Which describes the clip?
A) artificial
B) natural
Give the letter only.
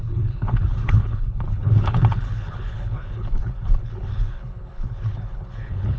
A